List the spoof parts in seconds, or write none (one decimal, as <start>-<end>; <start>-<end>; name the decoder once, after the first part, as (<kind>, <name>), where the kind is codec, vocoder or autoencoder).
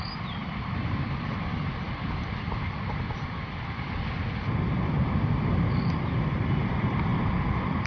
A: 7.1-7.9 (vocoder, BigVGAN v2)